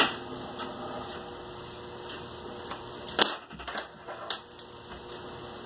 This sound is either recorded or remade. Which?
recorded